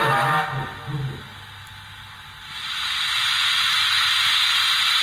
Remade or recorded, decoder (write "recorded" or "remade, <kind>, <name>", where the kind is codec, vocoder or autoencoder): recorded